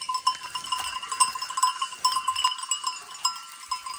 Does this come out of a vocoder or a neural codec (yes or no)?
no